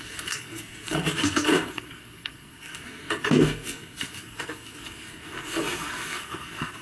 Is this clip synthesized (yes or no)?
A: yes